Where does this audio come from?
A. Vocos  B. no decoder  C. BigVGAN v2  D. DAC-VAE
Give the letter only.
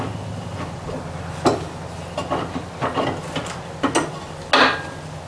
B